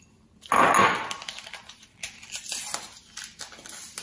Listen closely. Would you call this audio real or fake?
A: real